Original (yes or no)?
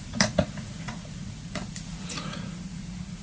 no